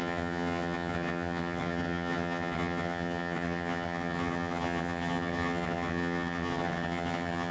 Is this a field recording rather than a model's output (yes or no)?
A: no